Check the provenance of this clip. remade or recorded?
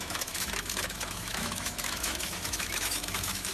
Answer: remade